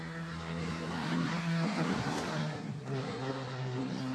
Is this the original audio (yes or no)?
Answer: no